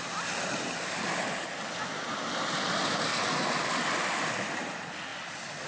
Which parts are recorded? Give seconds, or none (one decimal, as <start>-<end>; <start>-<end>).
0.0-5.7